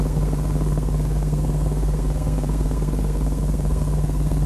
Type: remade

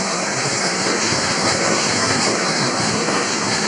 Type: remade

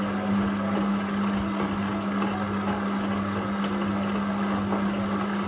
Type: recorded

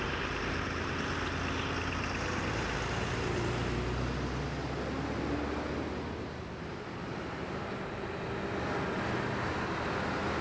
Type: recorded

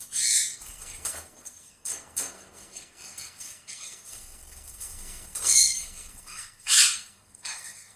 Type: remade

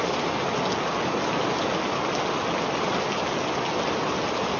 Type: recorded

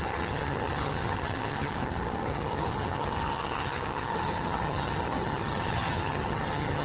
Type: remade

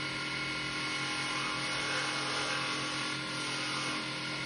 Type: recorded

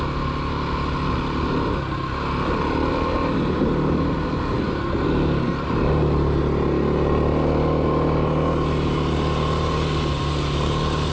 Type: recorded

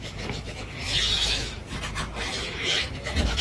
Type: remade